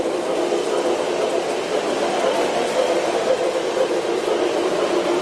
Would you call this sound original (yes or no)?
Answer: yes